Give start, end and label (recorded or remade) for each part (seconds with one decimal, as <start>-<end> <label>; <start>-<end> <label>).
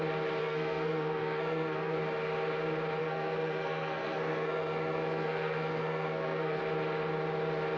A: 0.0-0.4 recorded; 0.4-2.0 remade; 2.0-3.0 recorded; 3.0-6.6 remade; 6.6-7.8 recorded